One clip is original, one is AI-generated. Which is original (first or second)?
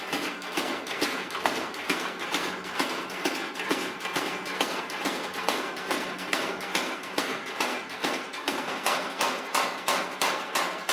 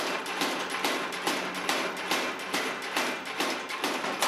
second